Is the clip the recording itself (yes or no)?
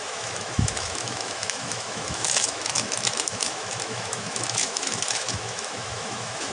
no